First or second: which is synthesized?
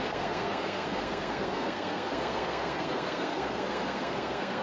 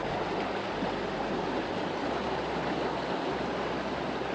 first